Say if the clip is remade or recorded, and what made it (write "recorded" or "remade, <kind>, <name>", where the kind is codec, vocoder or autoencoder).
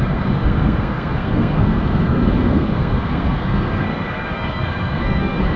remade, codec, SNAC